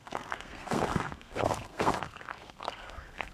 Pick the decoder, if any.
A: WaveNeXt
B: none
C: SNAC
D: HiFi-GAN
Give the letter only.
C